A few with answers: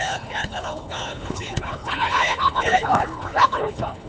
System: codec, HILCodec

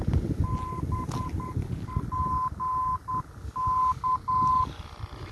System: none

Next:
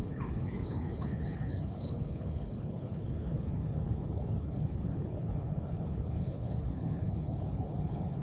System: codec, HILCodec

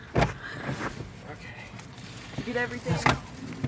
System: none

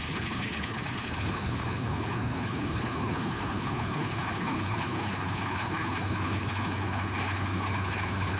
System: codec, HILCodec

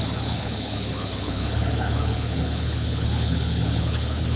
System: codec, HILCodec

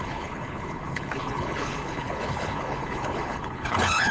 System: codec, HILCodec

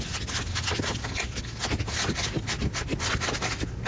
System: none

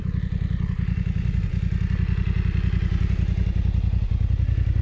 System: none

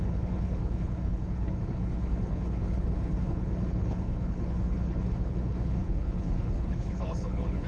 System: codec, HILCodec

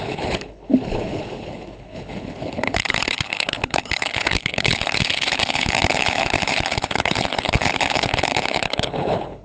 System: codec, HILCodec